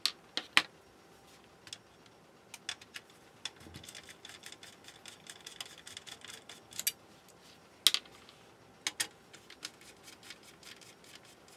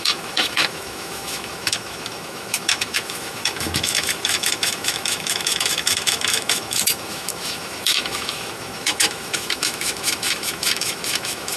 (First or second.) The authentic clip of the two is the first